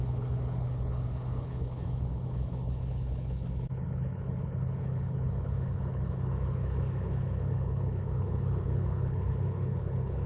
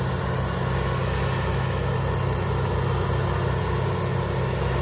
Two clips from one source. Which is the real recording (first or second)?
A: second